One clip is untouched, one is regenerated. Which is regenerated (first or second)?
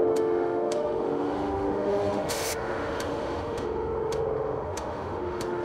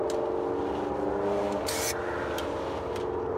first